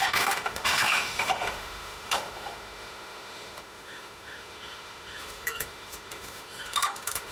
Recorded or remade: remade